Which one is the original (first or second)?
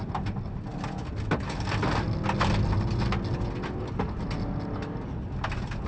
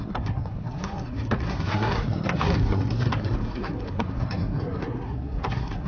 first